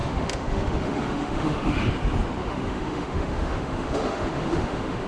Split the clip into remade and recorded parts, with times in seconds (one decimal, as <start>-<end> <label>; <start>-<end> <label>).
0.0-1.9 remade; 1.9-2.4 recorded; 2.4-5.1 remade

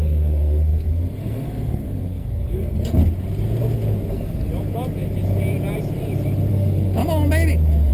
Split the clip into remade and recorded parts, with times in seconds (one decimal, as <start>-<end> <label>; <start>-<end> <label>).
0.0-3.0 remade; 3.0-4.1 recorded; 4.1-4.5 remade; 4.5-6.5 recorded; 6.5-7.0 remade; 7.0-7.9 recorded

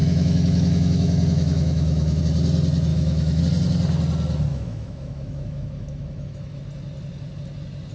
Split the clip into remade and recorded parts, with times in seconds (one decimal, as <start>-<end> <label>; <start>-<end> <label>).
0.0-2.2 remade; 2.2-2.9 recorded; 2.9-3.4 remade; 3.4-4.5 recorded; 4.5-6.6 remade; 6.6-7.9 recorded

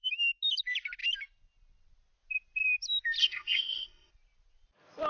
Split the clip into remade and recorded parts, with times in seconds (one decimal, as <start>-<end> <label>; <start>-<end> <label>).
0.0-3.2 recorded; 3.2-4.1 remade; 4.1-5.1 recorded